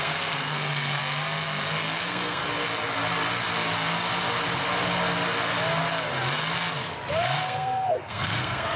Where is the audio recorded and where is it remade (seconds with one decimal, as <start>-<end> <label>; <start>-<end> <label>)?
0.0-1.0 remade; 1.0-2.0 recorded; 2.0-2.4 remade; 2.4-7.1 recorded; 7.1-8.8 remade